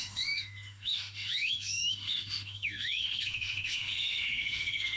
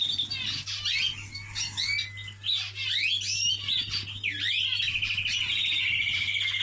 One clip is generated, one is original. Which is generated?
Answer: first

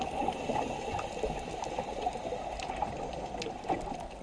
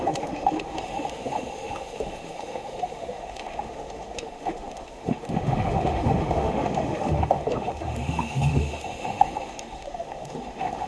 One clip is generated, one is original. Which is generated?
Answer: second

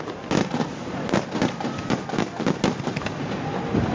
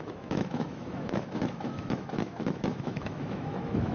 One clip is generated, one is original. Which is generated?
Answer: second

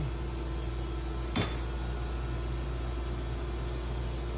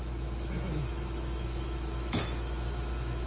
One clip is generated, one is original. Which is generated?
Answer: second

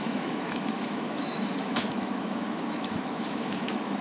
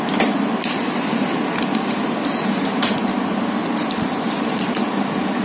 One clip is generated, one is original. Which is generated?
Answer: first